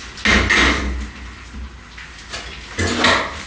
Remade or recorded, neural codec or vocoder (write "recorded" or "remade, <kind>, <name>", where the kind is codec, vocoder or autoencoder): recorded